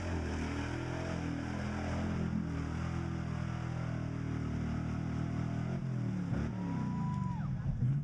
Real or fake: real